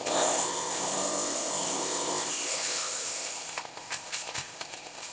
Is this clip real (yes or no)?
no